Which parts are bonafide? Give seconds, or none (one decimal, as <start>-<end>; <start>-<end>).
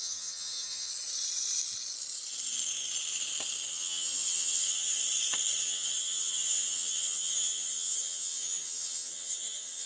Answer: 0.9-3.7; 5.0-5.6